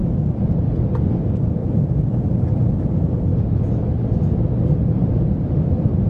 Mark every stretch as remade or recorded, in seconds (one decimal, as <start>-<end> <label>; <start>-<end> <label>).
0.0-1.6 recorded; 1.6-2.7 remade; 2.7-6.1 recorded